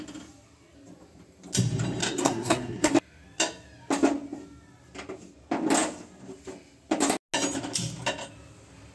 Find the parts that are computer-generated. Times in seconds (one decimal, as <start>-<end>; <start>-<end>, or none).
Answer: 2.0-2.9